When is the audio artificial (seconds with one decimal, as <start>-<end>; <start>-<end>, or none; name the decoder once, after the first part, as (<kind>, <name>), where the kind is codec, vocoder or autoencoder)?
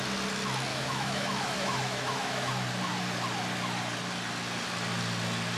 0.7-2.5 (autoencoder, DAC-VAE)